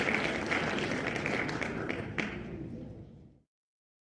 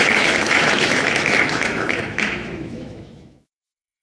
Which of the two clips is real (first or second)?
first